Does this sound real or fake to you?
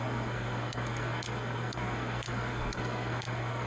fake